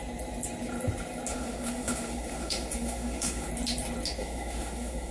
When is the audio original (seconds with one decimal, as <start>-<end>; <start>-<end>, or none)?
0.0-1.3; 3.5-4.2